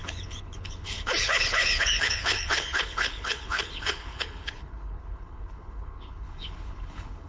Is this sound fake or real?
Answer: fake